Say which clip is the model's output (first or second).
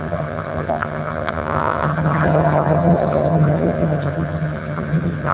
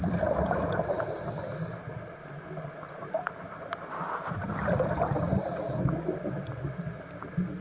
first